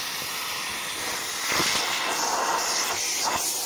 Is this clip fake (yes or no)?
no